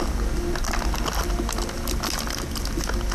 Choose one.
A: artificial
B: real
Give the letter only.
B